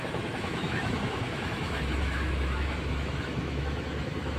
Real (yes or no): no